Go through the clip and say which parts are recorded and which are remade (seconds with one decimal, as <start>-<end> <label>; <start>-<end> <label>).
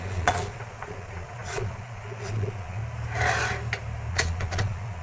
0.0-2.8 remade; 2.8-4.1 recorded; 4.1-5.0 remade